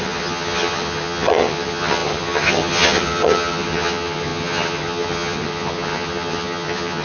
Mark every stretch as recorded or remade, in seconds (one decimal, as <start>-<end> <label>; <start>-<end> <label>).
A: 0.0-7.0 remade